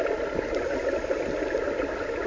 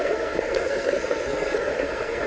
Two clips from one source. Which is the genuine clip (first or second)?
first